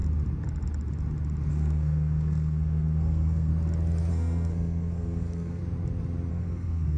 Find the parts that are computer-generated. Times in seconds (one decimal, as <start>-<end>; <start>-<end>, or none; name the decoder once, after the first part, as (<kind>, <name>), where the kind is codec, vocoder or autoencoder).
1.5-3.5 (codec, SNAC); 4.1-5.6; 6.3-7.0